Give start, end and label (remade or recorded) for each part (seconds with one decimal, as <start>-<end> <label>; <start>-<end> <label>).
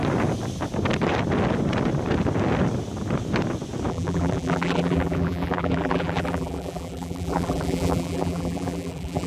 0.0-3.9 recorded; 3.9-9.3 remade